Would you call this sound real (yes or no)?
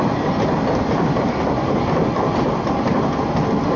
yes